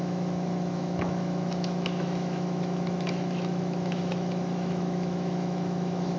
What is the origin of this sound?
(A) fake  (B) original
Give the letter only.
A